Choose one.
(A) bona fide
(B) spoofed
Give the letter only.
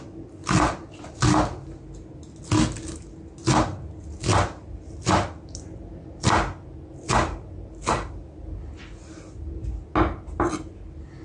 A